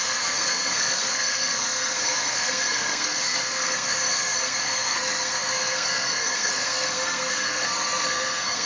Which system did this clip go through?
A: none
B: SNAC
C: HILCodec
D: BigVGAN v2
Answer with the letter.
B